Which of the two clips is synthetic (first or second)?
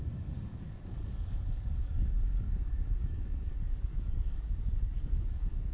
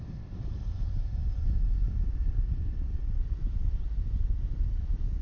first